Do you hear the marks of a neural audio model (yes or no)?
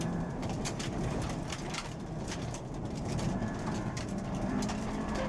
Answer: yes